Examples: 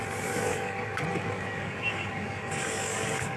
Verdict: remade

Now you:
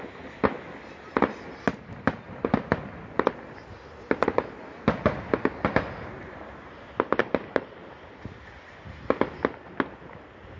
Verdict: recorded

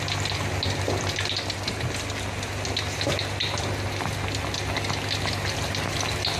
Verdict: recorded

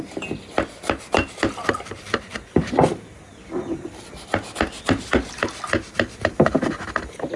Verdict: recorded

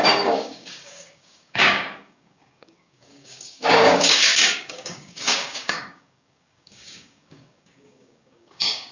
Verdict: remade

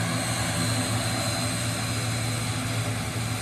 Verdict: recorded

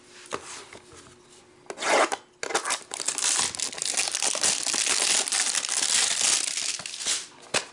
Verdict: recorded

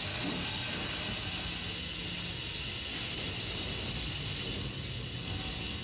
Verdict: recorded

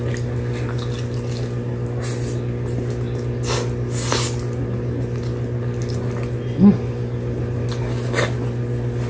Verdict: recorded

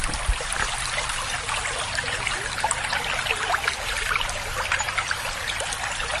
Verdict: recorded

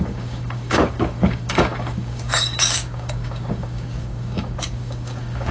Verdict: remade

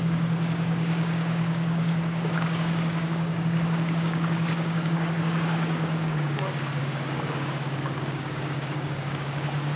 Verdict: remade